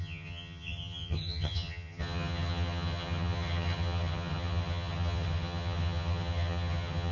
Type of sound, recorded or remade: remade